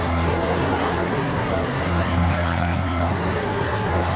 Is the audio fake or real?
fake